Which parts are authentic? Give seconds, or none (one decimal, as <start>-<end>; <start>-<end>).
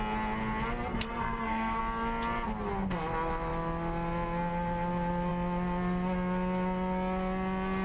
0.0-0.9; 1.8-7.8